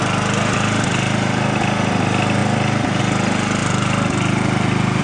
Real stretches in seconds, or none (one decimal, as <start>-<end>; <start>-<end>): 0.0-5.0

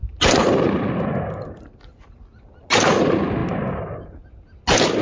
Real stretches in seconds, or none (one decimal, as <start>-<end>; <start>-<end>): 0.0-5.0

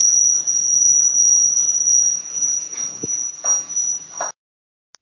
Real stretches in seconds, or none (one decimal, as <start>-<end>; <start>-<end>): 3.0-5.0

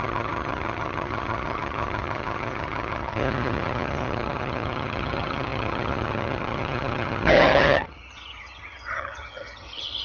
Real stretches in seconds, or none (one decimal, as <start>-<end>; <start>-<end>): none

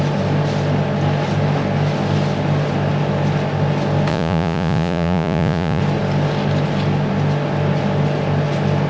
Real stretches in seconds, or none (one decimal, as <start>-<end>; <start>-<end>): 0.0-4.1; 5.8-8.9

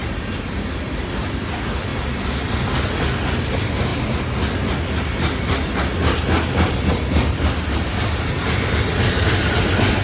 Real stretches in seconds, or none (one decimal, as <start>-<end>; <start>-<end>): 0.0-10.0